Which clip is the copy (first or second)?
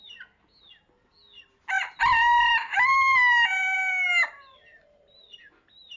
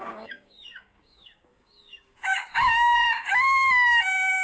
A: second